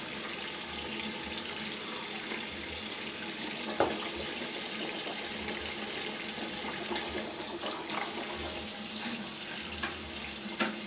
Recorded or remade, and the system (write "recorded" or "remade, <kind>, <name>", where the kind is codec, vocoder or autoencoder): recorded